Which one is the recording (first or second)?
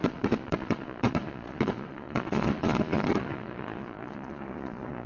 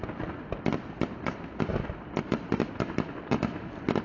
second